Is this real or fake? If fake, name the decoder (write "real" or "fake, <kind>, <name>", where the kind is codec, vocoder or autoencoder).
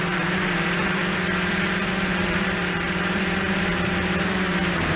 fake, vocoder, BigVGAN v2